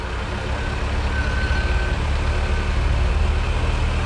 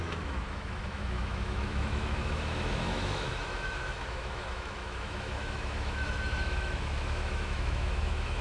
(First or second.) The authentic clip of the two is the first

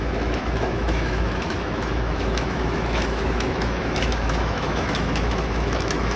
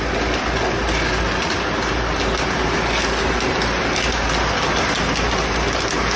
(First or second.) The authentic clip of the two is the second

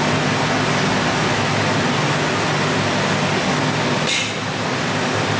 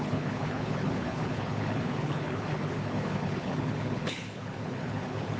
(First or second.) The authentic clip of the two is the first